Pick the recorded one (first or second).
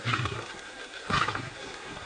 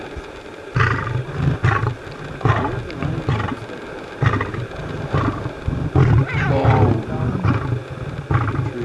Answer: second